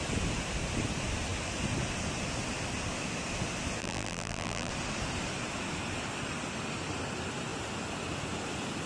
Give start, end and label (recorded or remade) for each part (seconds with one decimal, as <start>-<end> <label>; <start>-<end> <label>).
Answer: 0.0-3.8 recorded; 3.8-4.7 remade; 4.7-8.9 recorded

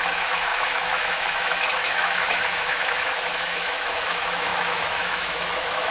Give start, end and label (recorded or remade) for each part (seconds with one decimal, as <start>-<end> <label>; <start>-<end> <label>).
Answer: 0.0-5.9 remade

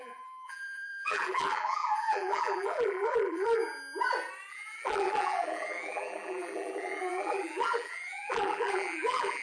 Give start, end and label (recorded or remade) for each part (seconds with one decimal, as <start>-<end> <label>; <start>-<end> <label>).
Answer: 0.0-3.6 remade; 3.6-4.5 recorded; 4.5-9.4 remade

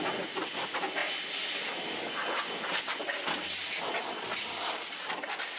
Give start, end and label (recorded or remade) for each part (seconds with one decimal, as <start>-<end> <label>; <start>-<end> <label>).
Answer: 0.0-5.6 recorded

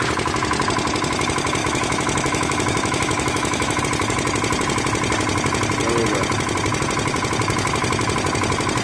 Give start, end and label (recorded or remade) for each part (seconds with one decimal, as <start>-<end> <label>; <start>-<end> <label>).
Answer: 0.0-1.6 recorded; 1.6-3.8 remade; 3.8-8.8 recorded

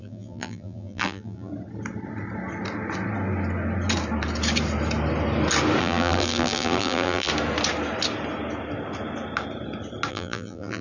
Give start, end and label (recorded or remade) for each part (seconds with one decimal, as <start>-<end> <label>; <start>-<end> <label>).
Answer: 0.0-1.5 remade; 1.5-5.8 recorded; 5.8-7.3 remade; 7.3-10.1 recorded; 10.1-10.8 remade

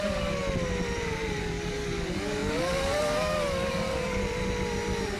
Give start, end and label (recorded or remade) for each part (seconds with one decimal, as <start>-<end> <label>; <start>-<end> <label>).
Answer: 0.0-0.4 remade; 0.4-1.4 recorded; 1.4-4.2 remade; 4.2-5.2 recorded

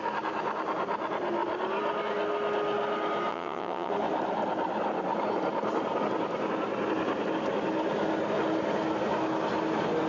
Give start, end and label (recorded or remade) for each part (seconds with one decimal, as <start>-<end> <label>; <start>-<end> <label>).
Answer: 0.0-3.3 recorded; 3.3-3.9 remade; 3.9-10.1 recorded